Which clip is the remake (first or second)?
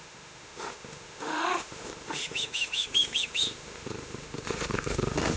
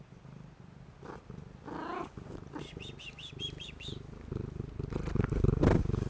first